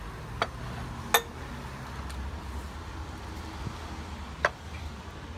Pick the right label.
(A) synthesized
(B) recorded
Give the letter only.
B